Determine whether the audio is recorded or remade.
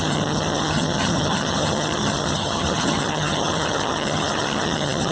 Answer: remade